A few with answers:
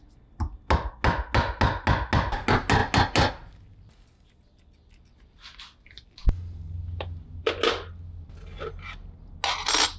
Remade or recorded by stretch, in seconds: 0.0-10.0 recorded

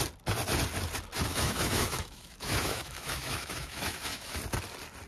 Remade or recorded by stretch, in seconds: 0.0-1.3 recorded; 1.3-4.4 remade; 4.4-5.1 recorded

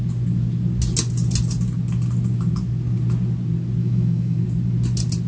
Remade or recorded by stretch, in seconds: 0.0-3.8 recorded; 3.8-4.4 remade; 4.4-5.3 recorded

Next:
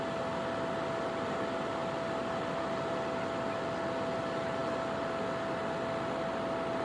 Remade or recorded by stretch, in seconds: 0.0-6.8 recorded

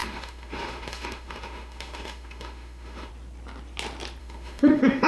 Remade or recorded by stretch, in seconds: 0.0-3.1 remade; 3.1-4.2 recorded; 4.2-5.1 remade

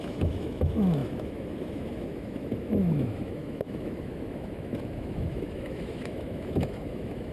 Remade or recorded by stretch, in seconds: 0.0-7.3 remade

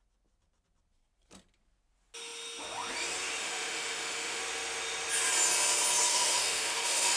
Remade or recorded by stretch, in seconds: 0.0-3.4 recorded; 3.4-4.4 remade; 4.4-6.1 recorded; 6.1-7.2 remade

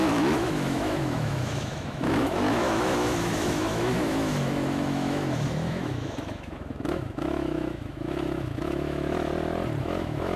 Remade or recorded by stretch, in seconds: 0.0-9.3 remade; 9.3-9.8 recorded; 9.8-10.4 remade